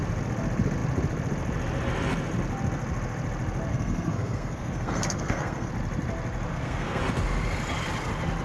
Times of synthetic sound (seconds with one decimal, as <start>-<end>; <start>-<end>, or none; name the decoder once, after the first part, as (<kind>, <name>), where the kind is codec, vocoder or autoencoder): 3.7-5.7 (codec, SNAC); 6.5-7.0